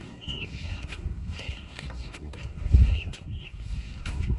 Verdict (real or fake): fake